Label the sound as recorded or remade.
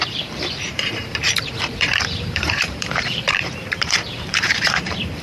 remade